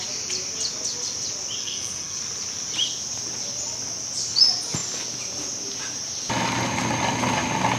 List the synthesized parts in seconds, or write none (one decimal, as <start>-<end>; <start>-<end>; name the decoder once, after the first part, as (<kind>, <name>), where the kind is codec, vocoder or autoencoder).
1.6-2.2 (codec, SNAC)